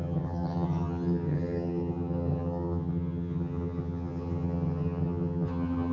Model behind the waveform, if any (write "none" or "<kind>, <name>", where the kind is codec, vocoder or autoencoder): vocoder, HiFi-GAN